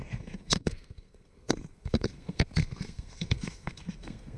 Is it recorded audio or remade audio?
remade